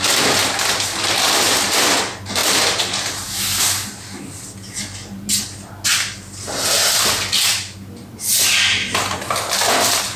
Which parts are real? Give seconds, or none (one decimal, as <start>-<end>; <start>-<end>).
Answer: 0.0-10.2